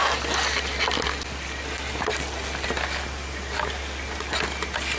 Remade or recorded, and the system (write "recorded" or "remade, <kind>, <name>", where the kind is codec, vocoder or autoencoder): recorded